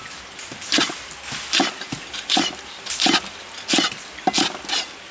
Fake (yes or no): no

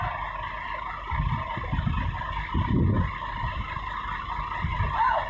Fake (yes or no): no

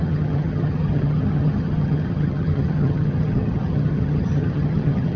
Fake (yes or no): yes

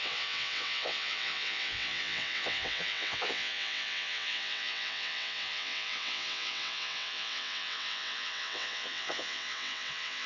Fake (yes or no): yes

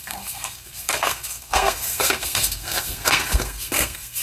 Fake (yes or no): yes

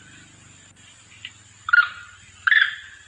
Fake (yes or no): no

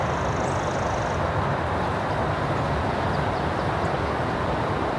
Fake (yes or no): no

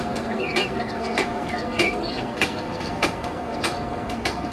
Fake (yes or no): yes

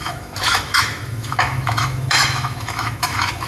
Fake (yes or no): yes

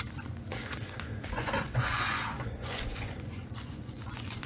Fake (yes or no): yes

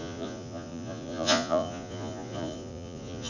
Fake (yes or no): yes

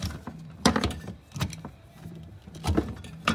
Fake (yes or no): yes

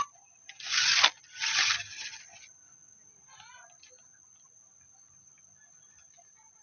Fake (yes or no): no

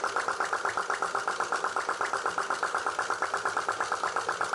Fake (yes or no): no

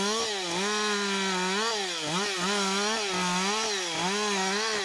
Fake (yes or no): no